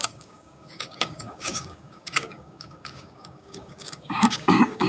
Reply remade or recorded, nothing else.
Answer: remade